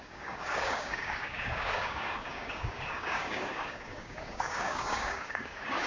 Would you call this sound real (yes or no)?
no